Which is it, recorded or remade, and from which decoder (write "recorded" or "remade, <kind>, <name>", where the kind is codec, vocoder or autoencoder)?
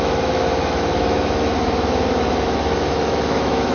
remade, autoencoder, DAC-VAE